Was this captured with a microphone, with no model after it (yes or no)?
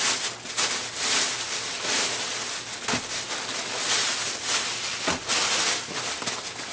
yes